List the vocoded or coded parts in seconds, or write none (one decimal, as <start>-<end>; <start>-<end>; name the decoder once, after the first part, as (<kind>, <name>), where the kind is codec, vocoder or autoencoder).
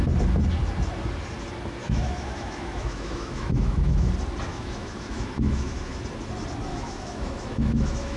1.8-4.1 (autoencoder, DAC-VAE); 4.5-6.0; 6.7-8.2